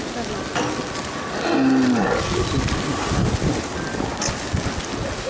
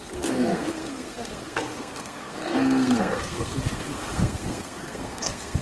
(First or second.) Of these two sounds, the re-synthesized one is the second